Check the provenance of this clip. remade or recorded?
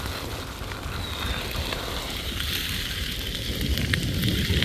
recorded